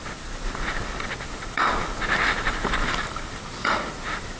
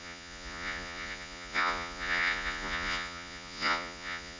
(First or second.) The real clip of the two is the first